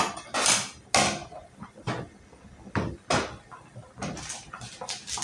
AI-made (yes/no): no